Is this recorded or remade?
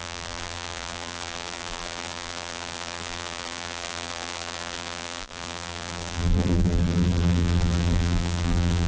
remade